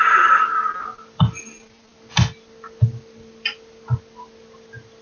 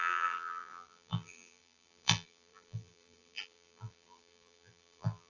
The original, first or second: first